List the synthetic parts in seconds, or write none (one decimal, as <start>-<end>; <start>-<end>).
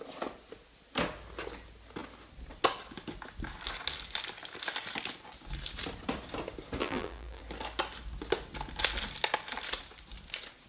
6.8-7.4